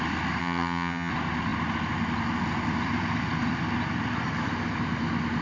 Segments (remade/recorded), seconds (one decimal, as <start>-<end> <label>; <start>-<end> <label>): 0.0-0.4 recorded; 0.4-1.1 remade; 1.1-5.4 recorded